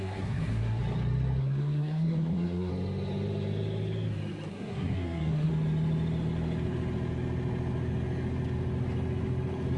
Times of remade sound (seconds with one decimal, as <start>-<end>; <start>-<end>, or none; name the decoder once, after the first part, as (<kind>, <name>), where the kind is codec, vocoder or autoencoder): 0.0-0.8 (codec, SNAC); 1.4-2.7; 4.5-5.5